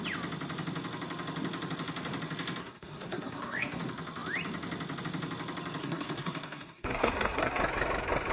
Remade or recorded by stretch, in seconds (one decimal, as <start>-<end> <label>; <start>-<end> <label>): 0.0-2.6 recorded; 2.6-3.8 remade; 3.8-5.8 recorded; 5.8-7.6 remade; 7.6-8.3 recorded